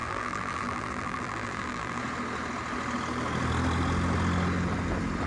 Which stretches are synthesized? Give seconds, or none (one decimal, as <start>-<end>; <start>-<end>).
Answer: 0.0-2.0